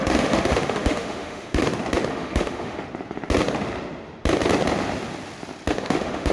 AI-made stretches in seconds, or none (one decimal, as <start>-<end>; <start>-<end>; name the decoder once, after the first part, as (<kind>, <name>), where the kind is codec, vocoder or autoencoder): 0.0-1.6 (autoencoder, DAC-VAE); 2.1-2.8; 5.7-6.3